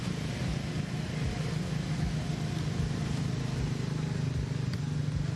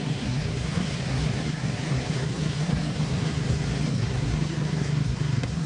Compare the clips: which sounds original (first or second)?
first